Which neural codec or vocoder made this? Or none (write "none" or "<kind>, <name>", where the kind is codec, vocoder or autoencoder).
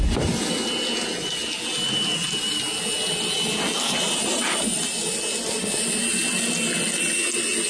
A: none